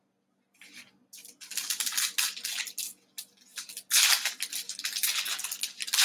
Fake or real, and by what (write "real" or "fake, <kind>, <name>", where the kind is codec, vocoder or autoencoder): real